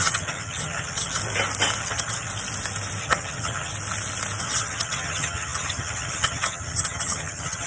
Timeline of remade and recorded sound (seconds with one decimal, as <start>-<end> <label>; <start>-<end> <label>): 0.0-1.2 remade; 1.2-1.8 recorded; 1.8-2.3 remade; 2.3-3.0 recorded; 3.0-3.7 remade; 3.7-4.4 recorded; 4.4-7.7 remade